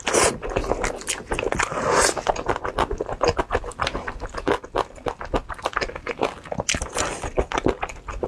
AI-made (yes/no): no